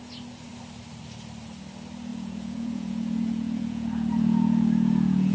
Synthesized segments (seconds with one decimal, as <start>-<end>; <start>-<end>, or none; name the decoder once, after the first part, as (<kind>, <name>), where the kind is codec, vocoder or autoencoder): 2.1-5.3 (vocoder, Vocos)

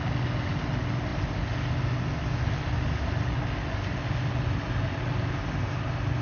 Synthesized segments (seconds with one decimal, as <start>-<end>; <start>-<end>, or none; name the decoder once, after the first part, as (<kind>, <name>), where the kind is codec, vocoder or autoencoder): none